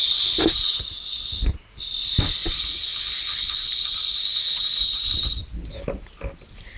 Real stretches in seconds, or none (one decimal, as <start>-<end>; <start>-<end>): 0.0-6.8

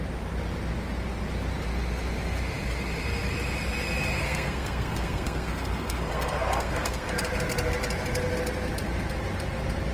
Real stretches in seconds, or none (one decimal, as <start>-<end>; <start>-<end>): 0.0-4.2; 7.1-9.9

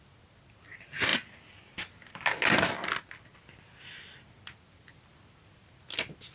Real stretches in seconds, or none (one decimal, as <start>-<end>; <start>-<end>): 0.0-6.3

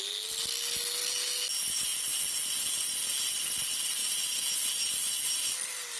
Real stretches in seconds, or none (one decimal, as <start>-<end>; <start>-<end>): 0.0-6.0

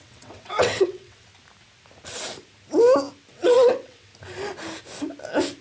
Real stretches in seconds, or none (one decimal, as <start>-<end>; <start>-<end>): 1.3-3.3; 4.1-5.6